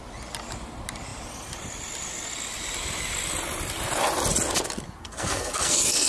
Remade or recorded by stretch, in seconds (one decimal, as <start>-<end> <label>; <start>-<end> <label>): 0.0-5.0 recorded; 5.0-6.1 remade